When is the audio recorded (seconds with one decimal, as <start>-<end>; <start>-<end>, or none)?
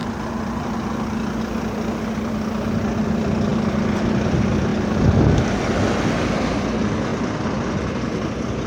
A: 0.0-8.7